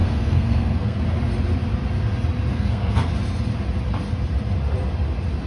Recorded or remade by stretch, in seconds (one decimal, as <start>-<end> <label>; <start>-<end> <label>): 0.0-1.0 remade; 1.0-2.5 recorded; 2.5-3.1 remade; 3.1-5.5 recorded